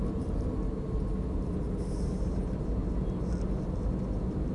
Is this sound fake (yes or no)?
no